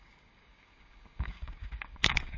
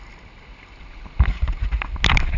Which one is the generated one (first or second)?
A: first